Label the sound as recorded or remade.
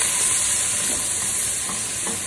recorded